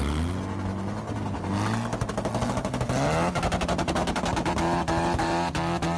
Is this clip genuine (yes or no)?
yes